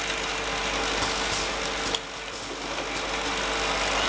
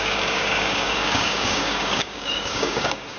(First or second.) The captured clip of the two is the first